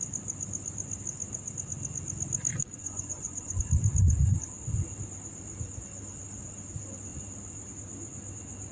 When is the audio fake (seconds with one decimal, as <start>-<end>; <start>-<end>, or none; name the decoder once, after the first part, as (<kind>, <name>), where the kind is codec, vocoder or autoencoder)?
2.5-3.6 (vocoder, Vocos)